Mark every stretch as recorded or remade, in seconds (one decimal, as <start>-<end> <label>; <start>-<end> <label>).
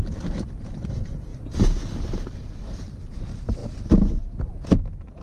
0.0-5.2 recorded